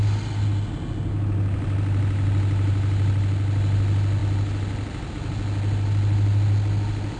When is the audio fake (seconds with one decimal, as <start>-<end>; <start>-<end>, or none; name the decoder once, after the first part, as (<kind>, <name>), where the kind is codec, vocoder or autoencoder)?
none